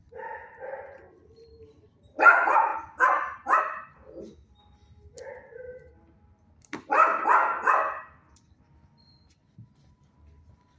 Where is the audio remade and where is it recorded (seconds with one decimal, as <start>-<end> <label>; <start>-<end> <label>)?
0.0-2.7 remade; 2.7-3.6 recorded; 3.6-10.8 remade